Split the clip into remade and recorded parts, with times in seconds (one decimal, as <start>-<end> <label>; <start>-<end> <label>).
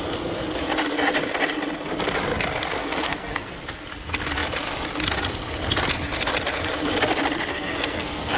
0.0-2.8 recorded; 2.8-3.6 remade; 3.6-7.5 recorded; 7.5-8.4 remade